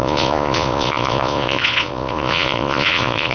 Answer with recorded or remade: remade